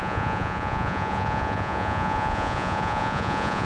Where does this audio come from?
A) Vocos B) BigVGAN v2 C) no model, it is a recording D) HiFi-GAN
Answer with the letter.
A